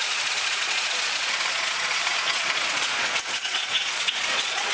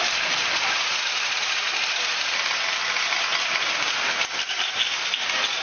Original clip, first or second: second